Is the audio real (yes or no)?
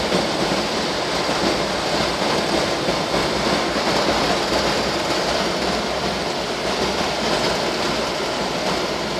no